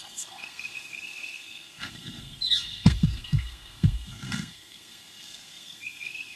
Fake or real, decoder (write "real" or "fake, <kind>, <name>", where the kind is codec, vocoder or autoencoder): fake, codec, SNAC